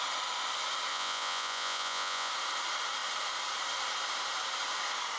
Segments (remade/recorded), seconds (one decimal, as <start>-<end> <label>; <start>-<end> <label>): 0.0-0.9 recorded; 0.9-2.3 remade; 2.3-5.2 recorded